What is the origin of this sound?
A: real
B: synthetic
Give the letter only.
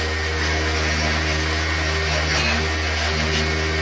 A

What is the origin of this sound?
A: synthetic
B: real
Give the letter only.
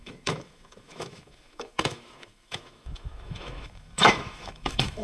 A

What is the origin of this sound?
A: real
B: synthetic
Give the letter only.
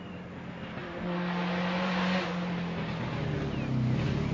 A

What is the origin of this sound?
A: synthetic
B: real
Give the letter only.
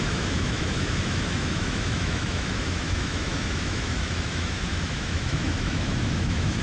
A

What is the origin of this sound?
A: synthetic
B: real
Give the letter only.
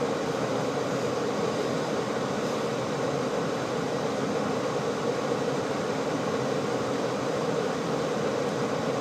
B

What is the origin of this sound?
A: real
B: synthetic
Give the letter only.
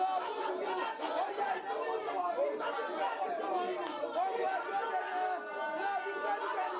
A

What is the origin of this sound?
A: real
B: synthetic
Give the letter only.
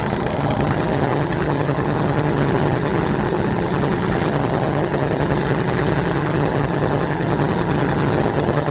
B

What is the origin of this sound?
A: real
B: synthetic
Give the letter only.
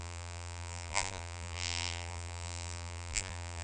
B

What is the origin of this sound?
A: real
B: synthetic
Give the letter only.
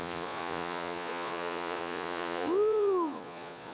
B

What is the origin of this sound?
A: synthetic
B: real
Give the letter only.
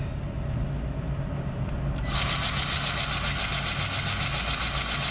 B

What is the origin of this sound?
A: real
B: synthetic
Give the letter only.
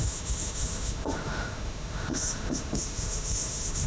B